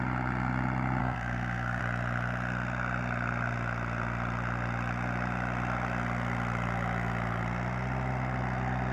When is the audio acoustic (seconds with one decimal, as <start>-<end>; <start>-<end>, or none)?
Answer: 0.0-1.0; 1.8-8.9